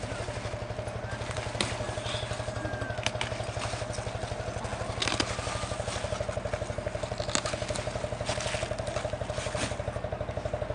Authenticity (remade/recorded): recorded